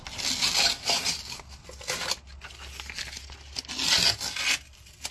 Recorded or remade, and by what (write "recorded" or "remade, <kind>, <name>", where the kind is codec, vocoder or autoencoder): recorded